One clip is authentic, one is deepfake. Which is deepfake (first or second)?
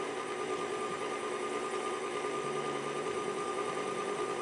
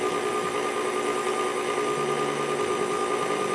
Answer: first